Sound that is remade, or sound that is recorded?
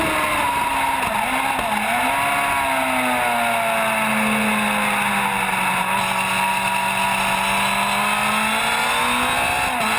recorded